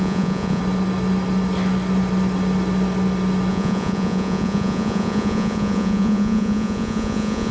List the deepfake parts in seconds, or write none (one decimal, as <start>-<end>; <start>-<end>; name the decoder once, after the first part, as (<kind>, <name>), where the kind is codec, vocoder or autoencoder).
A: 0.0-0.6 (vocoder, Vocos); 3.5-7.5